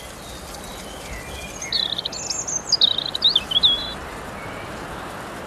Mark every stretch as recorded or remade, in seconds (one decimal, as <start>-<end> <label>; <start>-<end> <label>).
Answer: 0.0-5.5 recorded